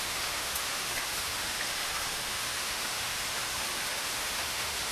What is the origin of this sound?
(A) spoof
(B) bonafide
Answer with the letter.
A